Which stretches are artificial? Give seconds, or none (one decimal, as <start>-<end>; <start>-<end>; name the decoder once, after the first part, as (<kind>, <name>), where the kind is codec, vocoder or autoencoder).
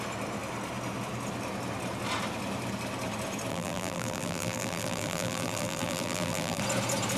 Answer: 3.5-6.6 (vocoder, BigVGAN v2)